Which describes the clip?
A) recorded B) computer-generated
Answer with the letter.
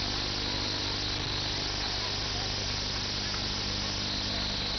A